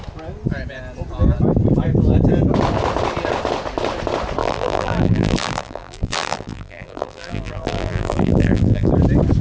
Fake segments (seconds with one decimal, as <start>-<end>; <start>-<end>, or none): 4.4-8.9